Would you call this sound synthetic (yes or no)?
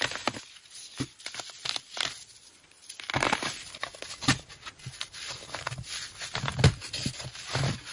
no